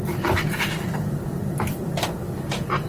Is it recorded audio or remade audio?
remade